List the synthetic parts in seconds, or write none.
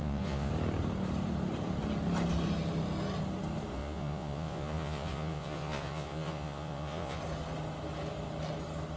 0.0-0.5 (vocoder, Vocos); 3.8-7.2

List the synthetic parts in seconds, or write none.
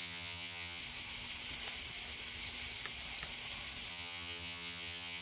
0.0-0.8 (vocoder, HiFi-GAN); 3.9-5.2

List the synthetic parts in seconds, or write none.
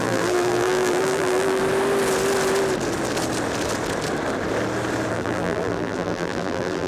0.0-1.6 (vocoder, BigVGAN v2); 5.1-6.9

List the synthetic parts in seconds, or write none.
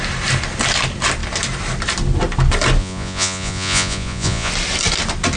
2.8-4.5 (vocoder, Vocos)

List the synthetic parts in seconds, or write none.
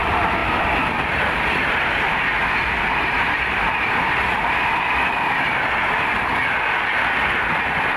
none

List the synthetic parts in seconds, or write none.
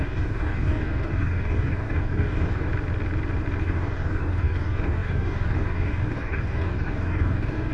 0.0-2.7 (codec, DAC); 3.6-7.7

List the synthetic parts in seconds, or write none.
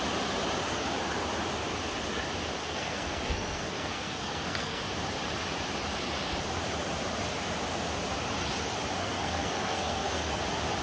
2.6-4.8 (codec, SNAC); 9.0-10.4